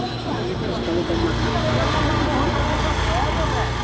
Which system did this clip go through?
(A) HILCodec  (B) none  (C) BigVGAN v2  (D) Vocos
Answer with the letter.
B